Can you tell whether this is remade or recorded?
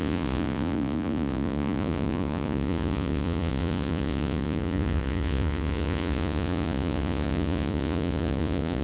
remade